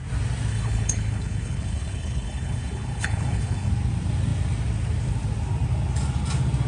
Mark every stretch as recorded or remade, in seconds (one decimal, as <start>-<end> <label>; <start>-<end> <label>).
0.0-0.5 recorded; 0.5-3.7 remade; 3.7-6.7 recorded